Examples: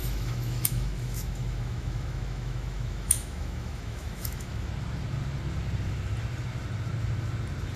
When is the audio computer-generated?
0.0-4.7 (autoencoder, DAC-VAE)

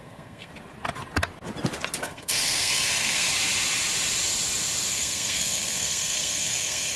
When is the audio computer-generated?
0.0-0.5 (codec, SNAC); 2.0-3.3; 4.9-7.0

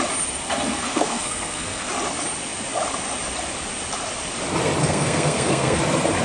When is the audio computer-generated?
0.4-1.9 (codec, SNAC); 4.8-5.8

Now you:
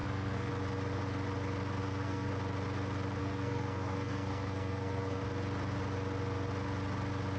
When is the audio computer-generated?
0.0-0.5 (codec, SNAC); 1.8-2.3; 3.2-5.2

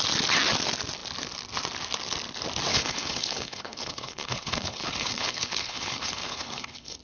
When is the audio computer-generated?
2.7-7.0 (codec, HILCodec)